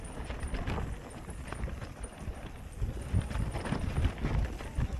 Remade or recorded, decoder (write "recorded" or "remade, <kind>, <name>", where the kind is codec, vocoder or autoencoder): recorded